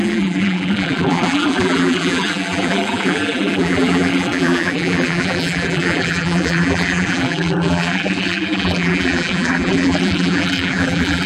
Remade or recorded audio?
remade